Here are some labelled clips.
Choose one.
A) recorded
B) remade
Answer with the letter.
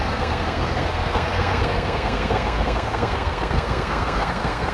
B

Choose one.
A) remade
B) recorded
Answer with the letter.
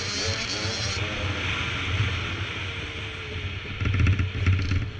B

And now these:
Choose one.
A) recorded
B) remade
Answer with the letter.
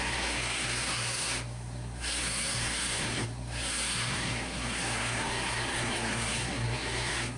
B